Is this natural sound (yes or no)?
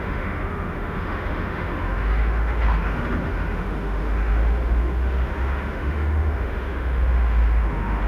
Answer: no